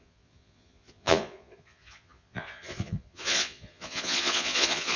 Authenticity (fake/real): fake